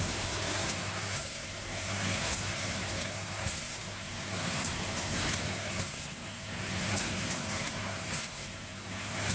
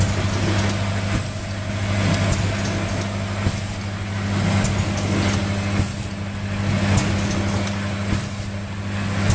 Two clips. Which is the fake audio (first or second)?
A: first